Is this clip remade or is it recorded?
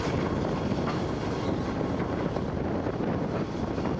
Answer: recorded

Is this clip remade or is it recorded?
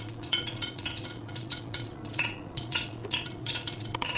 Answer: remade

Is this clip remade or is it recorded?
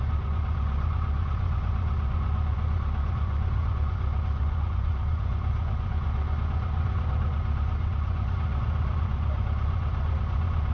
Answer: remade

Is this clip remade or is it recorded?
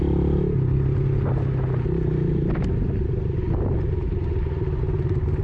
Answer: recorded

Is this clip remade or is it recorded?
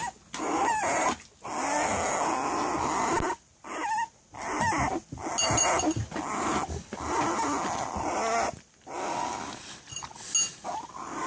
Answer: recorded